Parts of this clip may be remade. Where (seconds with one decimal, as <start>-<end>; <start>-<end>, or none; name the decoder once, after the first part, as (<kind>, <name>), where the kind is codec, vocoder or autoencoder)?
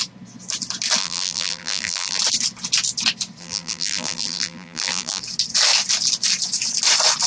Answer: 1.0-2.2 (vocoder, BigVGAN v2); 3.4-5.2